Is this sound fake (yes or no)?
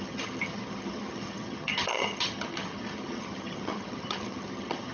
yes